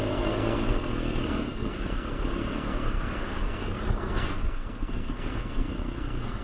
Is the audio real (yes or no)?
no